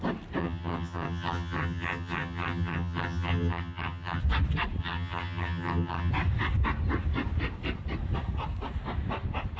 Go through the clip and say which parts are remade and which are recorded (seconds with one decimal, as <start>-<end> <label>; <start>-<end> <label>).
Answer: 0.0-0.4 recorded; 0.4-4.2 remade; 4.2-4.8 recorded; 4.8-6.1 remade; 6.1-9.6 recorded